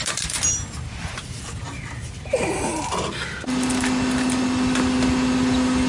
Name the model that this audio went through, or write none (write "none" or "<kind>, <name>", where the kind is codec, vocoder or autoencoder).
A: none